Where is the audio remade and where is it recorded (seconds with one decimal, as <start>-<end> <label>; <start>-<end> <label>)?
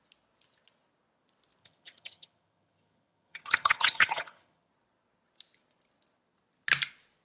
0.0-1.6 recorded; 1.6-4.7 remade; 4.7-7.2 recorded